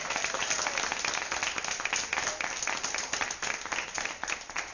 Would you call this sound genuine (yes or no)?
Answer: yes